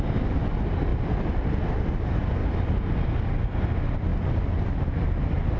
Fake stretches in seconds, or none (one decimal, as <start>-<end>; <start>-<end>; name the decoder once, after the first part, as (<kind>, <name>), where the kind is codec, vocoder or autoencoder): none